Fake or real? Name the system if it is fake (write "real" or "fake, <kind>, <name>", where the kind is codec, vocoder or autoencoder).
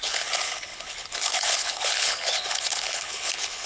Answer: fake, codec, HILCodec